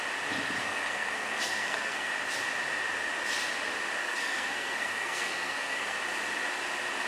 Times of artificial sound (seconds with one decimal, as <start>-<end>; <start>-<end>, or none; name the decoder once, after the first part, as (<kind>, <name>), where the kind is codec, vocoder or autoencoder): 0.6-2.1 (codec, SNAC); 4.0-6.0